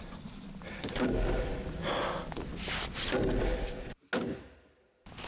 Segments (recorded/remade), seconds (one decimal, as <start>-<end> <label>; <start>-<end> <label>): 0.0-5.3 recorded